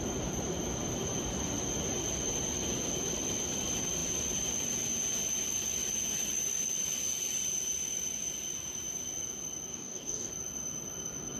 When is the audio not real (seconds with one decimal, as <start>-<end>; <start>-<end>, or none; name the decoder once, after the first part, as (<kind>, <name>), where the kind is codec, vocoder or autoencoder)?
9.7-10.3 (codec, DAC)

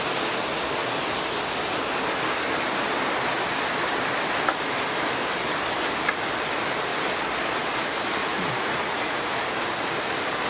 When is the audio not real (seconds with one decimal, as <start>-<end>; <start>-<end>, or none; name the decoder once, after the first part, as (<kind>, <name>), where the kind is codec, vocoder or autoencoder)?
8.2-9.3 (vocoder, Vocos)

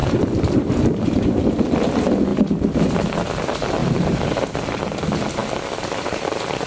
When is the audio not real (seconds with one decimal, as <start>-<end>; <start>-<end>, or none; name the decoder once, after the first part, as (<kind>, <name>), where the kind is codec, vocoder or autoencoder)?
0.0-1.4 (vocoder, BigVGAN v2); 2.3-2.9; 3.8-4.4

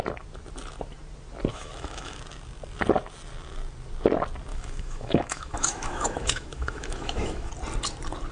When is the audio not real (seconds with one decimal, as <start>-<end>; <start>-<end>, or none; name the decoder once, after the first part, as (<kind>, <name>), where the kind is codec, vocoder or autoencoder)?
1.5-2.2 (autoencoder, DAC-VAE); 4.5-7.5

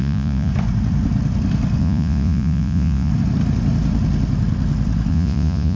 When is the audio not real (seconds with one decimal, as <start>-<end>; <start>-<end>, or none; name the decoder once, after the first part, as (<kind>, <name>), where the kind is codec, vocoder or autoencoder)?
0.0-0.5 (vocoder, Vocos); 1.8-3.1; 5.1-5.8